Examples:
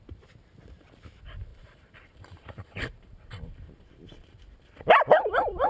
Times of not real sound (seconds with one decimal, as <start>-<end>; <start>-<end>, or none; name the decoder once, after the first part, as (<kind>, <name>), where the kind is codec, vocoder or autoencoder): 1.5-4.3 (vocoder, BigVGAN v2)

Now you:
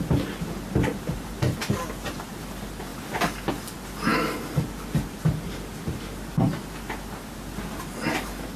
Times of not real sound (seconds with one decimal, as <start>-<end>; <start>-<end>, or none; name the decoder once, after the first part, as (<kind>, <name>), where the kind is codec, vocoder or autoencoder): none

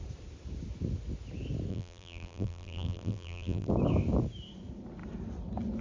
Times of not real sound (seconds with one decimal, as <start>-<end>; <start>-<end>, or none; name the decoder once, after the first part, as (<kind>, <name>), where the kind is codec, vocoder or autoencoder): 1.7-3.7 (vocoder, BigVGAN v2)